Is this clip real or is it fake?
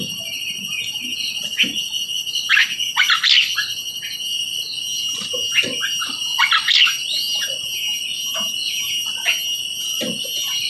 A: real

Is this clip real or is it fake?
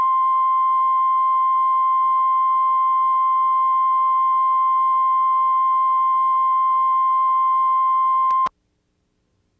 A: real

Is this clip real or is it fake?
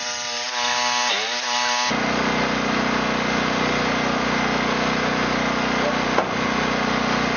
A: real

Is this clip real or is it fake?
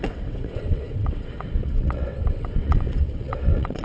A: fake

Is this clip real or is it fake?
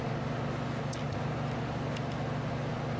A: real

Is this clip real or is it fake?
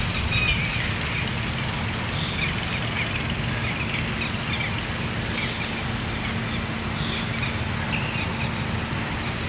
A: real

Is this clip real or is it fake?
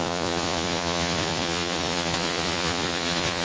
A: fake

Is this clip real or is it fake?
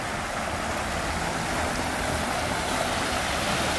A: real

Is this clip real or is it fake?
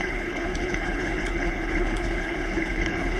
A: fake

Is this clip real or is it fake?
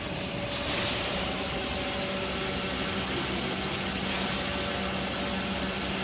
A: real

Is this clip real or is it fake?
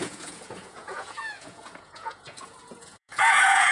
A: fake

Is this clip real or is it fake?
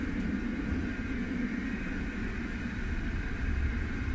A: real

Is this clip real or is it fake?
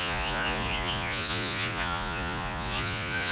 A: fake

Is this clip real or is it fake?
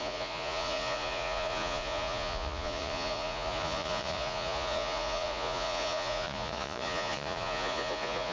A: fake